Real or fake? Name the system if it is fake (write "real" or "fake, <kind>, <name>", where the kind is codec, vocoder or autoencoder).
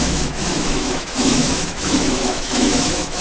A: fake, autoencoder, DAC-VAE